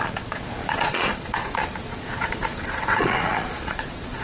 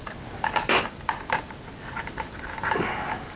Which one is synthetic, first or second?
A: first